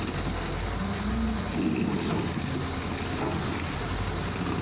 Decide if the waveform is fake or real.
real